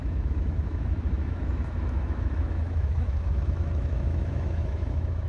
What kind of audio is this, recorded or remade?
remade